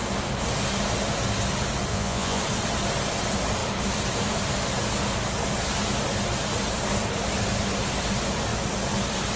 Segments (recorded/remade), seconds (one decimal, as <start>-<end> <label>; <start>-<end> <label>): 0.0-1.9 recorded; 1.9-2.4 remade; 2.4-9.4 recorded